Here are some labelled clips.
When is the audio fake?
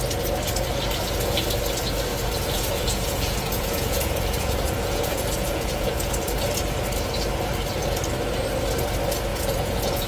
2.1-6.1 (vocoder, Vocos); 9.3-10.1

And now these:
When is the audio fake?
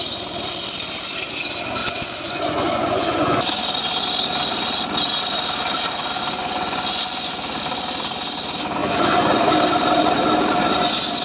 1.8-3.4 (vocoder, Vocos); 6.4-7.3; 8.8-9.5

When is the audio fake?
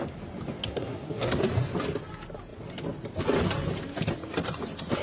0.6-1.4 (codec, SNAC)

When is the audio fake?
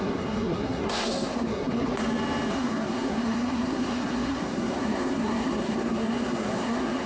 0.0-1.9 (codec, SNAC); 2.5-7.1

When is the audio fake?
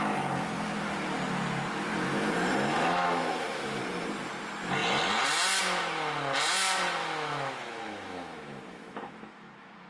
2.7-3.8 (autoencoder, DAC-VAE); 7.0-9.9